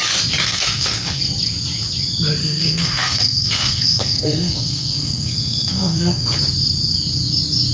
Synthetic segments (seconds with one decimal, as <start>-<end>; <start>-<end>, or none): 0.4-1.2; 2.4-6.4